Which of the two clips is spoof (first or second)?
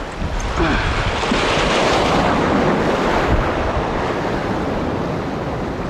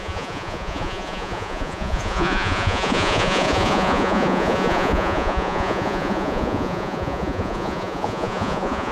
second